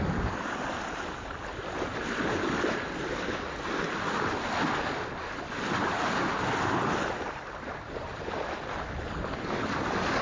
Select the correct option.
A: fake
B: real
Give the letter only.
B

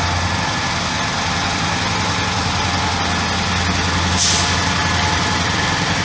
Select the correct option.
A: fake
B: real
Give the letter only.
B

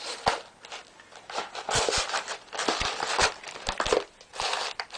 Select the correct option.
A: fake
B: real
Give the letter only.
B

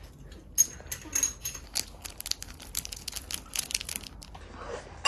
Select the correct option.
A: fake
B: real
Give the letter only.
B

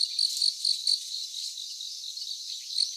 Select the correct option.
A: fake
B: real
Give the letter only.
A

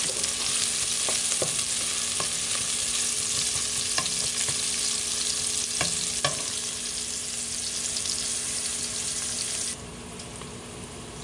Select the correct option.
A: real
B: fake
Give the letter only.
A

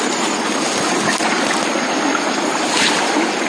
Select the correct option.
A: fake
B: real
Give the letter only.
B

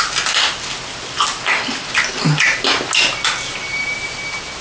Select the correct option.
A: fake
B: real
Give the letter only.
B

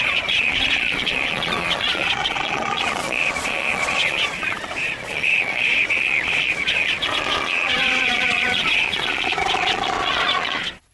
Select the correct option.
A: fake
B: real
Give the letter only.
A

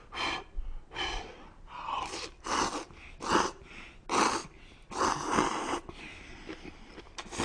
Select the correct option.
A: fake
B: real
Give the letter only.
B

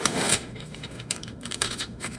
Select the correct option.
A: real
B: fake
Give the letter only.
B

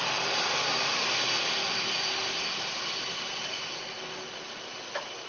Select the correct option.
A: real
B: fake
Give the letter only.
A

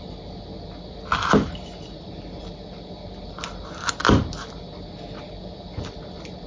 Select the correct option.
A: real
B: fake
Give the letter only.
A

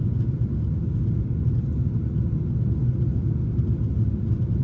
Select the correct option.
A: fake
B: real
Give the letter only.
B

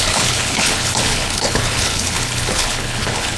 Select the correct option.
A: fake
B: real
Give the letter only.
A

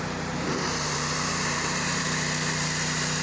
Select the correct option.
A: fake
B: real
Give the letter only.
A